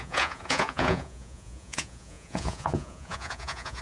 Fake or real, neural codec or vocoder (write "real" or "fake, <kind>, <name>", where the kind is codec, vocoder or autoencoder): fake, vocoder, Vocos